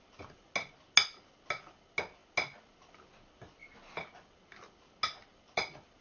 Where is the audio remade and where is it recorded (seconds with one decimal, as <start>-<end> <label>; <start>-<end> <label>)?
0.0-6.0 recorded